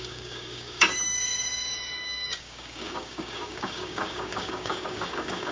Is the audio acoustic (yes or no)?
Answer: no